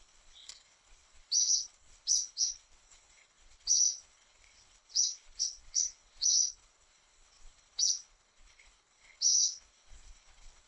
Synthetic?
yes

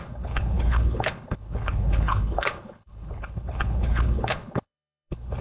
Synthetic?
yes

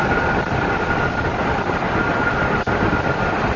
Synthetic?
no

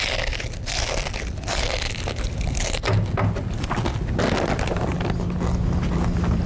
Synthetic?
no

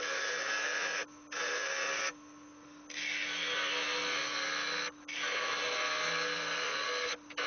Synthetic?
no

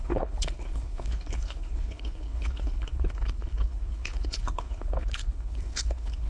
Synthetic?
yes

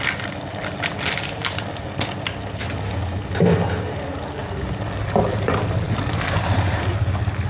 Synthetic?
no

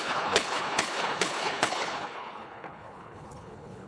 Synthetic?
yes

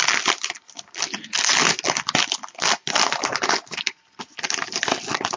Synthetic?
no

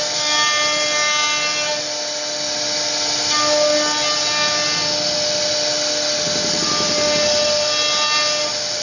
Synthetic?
no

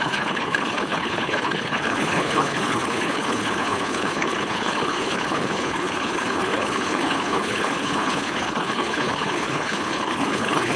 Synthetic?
yes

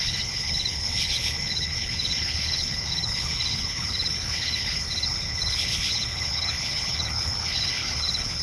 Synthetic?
yes